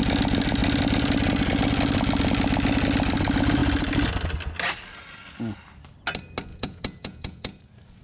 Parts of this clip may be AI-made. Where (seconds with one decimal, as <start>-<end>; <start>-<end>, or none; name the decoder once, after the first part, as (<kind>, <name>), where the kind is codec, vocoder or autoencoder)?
6.5-7.6 (vocoder, Vocos)